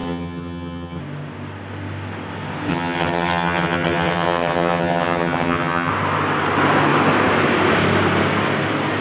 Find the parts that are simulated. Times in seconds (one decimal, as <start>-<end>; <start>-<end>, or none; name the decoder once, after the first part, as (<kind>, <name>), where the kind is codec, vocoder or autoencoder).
0.0-1.0 (vocoder, HiFi-GAN); 2.7-5.9